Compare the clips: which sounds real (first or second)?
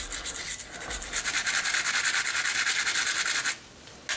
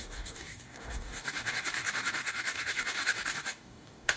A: first